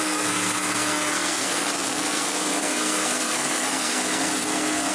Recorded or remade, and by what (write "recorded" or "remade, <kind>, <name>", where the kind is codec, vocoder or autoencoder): remade, codec, SNAC